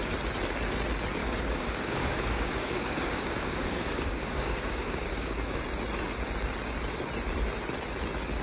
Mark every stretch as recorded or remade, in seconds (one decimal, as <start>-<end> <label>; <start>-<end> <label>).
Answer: 0.0-1.2 recorded; 1.2-5.6 remade; 5.6-8.4 recorded